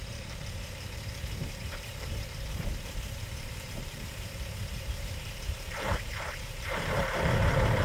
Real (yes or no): no